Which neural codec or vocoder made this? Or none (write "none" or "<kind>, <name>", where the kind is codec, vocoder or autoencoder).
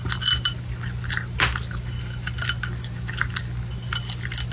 none